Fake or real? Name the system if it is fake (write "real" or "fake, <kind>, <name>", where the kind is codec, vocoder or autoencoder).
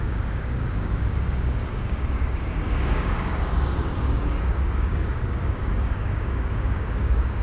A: fake, codec, DAC